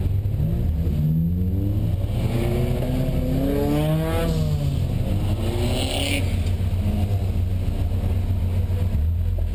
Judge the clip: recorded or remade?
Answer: recorded